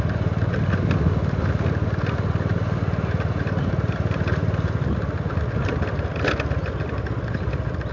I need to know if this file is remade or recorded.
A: recorded